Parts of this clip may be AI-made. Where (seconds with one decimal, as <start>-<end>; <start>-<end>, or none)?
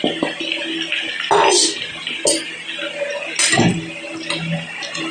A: none